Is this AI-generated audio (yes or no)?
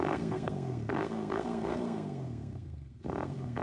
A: yes